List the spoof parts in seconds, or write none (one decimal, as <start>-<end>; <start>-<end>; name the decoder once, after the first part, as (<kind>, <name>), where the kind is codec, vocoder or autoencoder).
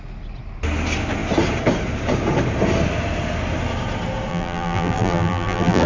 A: 4.3-5.9 (vocoder, BigVGAN v2)